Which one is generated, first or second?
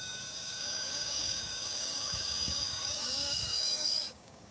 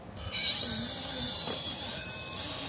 first